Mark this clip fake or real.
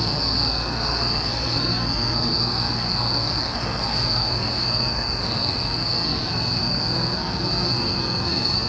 fake